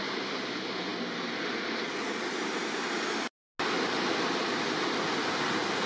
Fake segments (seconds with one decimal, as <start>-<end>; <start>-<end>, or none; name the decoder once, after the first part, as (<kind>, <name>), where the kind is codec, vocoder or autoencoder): none